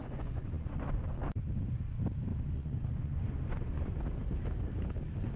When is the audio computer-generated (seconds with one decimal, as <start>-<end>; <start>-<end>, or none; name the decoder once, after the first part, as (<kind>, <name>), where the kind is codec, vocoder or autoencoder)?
0.0-1.0 (vocoder, Vocos); 2.3-4.0